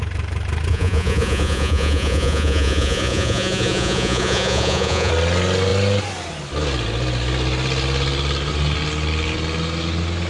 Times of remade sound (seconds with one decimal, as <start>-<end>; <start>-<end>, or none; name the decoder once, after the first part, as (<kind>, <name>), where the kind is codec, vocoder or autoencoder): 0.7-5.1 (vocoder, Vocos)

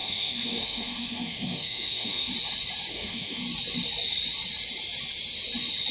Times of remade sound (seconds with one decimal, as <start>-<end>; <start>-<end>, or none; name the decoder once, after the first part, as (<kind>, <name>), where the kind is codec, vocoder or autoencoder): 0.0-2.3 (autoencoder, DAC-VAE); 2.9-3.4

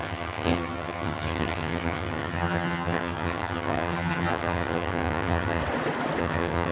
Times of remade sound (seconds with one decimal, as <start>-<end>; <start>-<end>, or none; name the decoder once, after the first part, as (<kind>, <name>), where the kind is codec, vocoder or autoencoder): 0.0-5.6 (vocoder, HiFi-GAN); 6.2-6.7

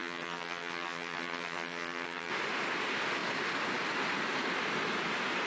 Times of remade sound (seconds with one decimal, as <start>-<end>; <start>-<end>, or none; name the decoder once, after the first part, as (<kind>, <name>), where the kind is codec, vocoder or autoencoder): 0.0-2.3 (vocoder, HiFi-GAN)

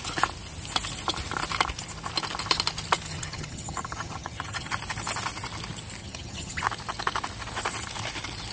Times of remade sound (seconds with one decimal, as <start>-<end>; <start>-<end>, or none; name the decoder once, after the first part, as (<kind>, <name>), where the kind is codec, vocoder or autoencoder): 3.1-4.7 (vocoder, HiFi-GAN); 6.0-6.6

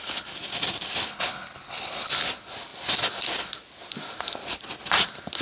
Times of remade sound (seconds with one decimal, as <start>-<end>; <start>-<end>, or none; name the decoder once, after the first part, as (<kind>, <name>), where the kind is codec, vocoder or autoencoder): 1.1-2.1 (codec, HILCodec)

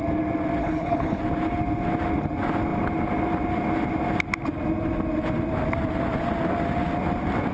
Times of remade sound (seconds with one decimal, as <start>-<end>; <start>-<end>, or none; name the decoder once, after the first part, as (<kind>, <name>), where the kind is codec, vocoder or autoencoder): 0.6-1.2 (codec, HILCodec)

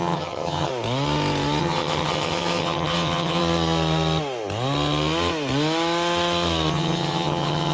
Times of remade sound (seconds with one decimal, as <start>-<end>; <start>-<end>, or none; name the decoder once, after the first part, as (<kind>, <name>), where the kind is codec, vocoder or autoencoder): 0.0-0.7 (vocoder, HiFi-GAN); 1.6-3.4; 6.7-7.7